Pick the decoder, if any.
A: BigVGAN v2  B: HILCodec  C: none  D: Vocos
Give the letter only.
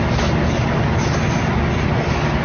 C